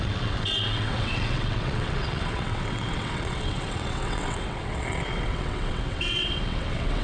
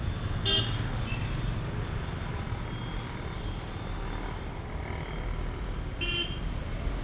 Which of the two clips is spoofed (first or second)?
first